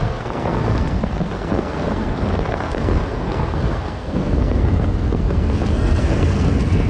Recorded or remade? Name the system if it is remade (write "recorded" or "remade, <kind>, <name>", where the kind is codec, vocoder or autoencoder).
remade, codec, SNAC